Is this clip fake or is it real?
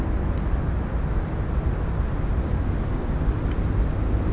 real